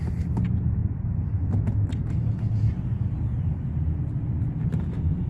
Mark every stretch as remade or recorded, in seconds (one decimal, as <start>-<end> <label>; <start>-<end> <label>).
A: 0.0-5.3 recorded